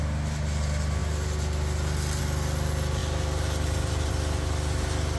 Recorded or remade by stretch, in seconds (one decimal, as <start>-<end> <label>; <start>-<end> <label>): 0.0-5.2 recorded